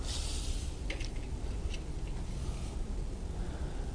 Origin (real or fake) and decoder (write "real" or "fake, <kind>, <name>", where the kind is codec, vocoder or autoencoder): real